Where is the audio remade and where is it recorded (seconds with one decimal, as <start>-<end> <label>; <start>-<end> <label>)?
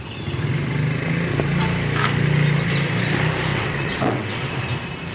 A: 0.0-3.5 recorded; 3.5-4.5 remade; 4.5-5.1 recorded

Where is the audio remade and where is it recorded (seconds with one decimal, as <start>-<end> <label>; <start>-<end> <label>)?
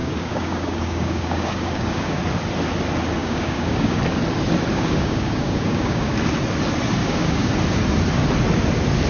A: 0.0-2.2 remade; 2.2-3.2 recorded; 3.2-4.0 remade; 4.0-4.7 recorded; 4.7-6.1 remade; 6.1-7.0 recorded; 7.0-7.5 remade; 7.5-9.1 recorded